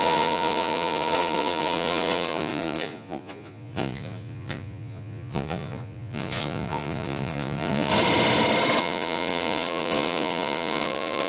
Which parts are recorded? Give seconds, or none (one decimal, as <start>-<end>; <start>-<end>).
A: 7.9-8.8

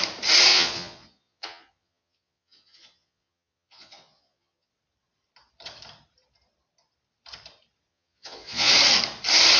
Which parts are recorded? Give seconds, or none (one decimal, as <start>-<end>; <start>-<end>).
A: 0.0-0.5; 4.7-7.9; 8.7-9.6

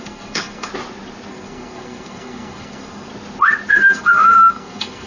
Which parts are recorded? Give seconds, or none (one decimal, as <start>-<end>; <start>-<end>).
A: 0.7-1.3; 3.1-3.7

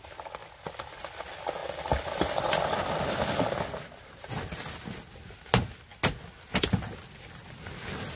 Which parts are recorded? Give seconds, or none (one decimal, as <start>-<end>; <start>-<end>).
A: 0.0-8.2

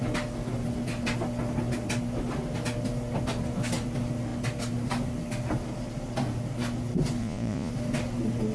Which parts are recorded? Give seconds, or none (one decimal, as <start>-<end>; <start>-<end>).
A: 0.0-7.2; 7.7-8.5

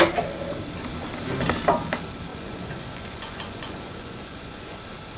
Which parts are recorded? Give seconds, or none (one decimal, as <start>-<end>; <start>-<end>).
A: 0.0-2.3; 4.8-5.2